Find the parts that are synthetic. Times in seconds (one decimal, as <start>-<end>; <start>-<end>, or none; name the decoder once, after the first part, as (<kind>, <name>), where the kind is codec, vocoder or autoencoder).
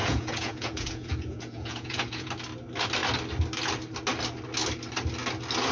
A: 0.0-2.3 (vocoder, Vocos)